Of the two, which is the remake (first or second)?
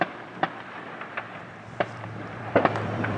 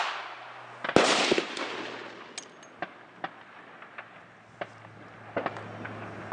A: first